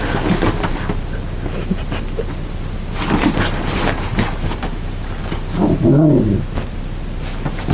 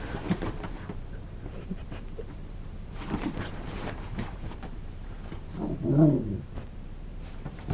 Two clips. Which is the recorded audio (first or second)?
first